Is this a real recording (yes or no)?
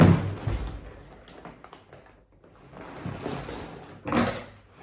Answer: yes